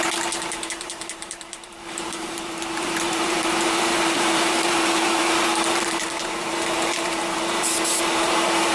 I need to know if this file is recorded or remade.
remade